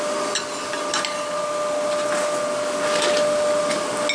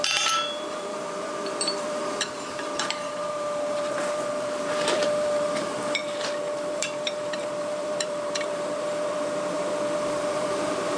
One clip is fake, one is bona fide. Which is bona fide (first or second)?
first